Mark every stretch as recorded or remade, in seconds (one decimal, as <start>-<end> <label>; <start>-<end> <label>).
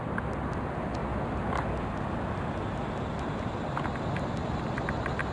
0.0-5.3 recorded